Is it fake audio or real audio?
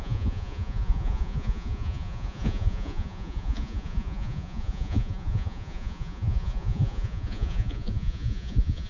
fake